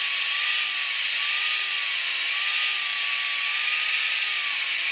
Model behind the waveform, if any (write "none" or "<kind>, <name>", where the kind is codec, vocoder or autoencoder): none